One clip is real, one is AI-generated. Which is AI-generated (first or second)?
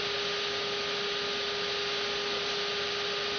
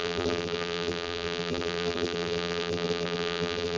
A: second